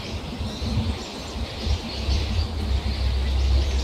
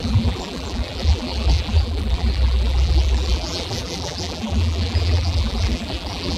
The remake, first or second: second